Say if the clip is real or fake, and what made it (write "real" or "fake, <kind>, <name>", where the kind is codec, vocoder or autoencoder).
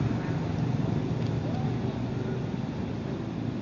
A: real